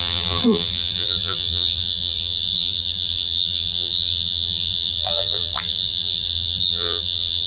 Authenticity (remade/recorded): remade